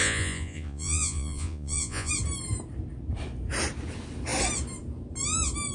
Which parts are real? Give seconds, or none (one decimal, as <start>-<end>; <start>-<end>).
2.1-5.7